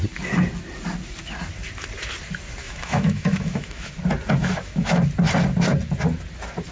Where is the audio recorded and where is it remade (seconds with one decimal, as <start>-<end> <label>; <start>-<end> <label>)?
0.0-2.6 recorded; 2.6-3.9 remade; 3.9-4.4 recorded; 4.4-5.0 remade; 5.0-6.7 recorded